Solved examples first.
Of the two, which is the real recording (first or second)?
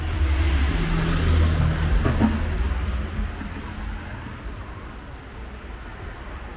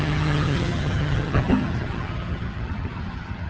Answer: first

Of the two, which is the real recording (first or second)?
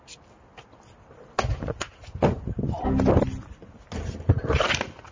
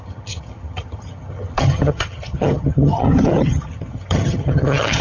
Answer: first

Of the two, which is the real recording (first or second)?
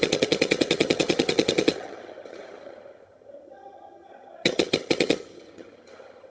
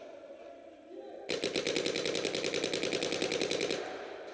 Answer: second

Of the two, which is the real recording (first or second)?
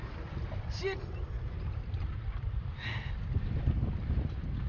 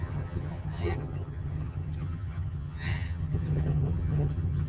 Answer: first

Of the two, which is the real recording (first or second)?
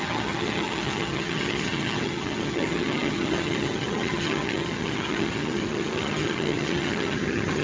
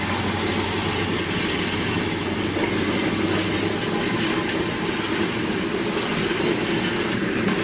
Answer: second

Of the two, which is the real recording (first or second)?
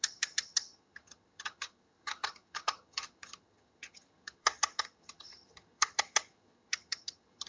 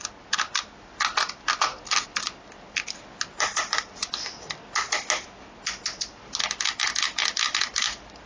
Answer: second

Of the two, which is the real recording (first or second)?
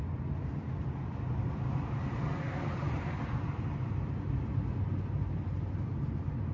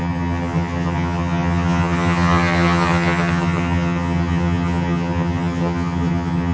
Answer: first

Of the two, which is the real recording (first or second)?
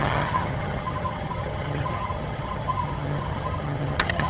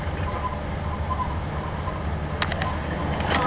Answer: second